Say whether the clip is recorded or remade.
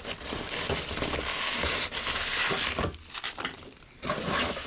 recorded